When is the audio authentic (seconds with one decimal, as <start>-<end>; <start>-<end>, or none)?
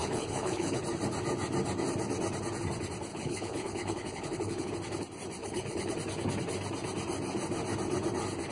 0.8-3.1; 4.7-5.4; 5.9-8.5